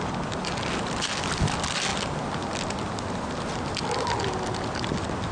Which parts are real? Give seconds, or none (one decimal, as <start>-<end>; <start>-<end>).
0.0-5.3